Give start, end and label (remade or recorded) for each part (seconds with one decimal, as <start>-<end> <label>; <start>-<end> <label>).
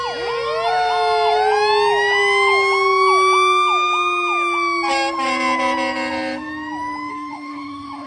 0.0-7.1 recorded; 7.1-8.1 remade